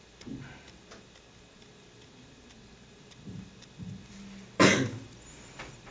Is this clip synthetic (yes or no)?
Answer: no